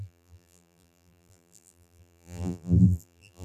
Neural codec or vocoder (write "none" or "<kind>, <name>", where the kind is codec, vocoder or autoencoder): vocoder, BigVGAN v2